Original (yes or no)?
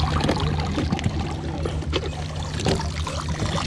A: yes